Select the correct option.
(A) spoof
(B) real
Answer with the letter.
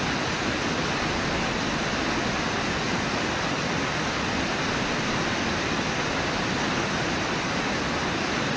B